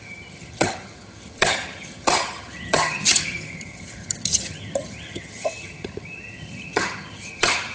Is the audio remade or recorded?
remade